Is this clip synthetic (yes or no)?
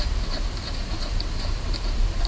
yes